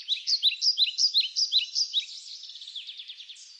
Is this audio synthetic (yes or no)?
no